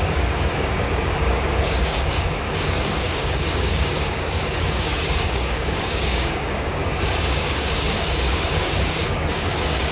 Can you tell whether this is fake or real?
fake